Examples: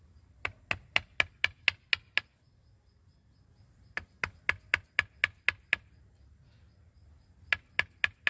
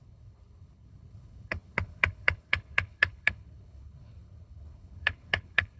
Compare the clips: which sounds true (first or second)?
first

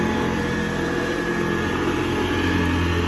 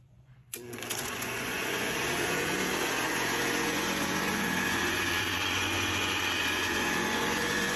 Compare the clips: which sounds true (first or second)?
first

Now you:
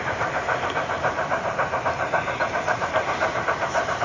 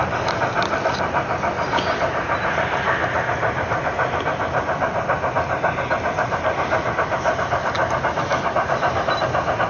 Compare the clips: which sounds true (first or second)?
second